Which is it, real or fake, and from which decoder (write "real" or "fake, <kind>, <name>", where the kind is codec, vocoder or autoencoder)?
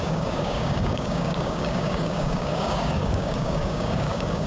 fake, codec, DAC